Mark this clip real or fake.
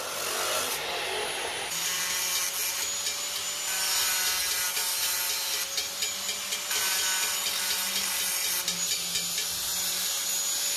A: real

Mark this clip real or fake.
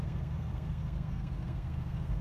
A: fake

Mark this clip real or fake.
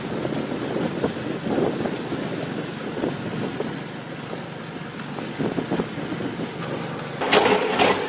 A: real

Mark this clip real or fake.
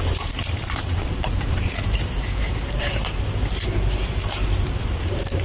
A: fake